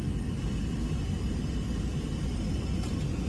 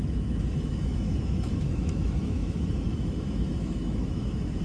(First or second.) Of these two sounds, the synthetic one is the second